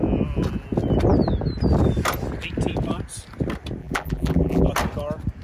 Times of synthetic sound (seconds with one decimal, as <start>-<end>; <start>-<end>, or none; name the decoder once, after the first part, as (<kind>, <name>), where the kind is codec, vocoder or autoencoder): 3.8-4.7 (vocoder, BigVGAN v2)